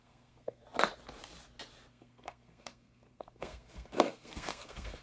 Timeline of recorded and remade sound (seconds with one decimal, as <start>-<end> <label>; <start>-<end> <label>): 0.0-0.6 remade; 0.6-1.9 recorded; 1.9-5.0 remade